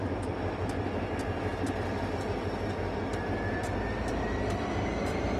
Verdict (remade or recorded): recorded